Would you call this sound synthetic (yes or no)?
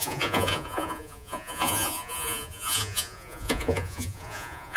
yes